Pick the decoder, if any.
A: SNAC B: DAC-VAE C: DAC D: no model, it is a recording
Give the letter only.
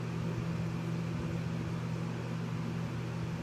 D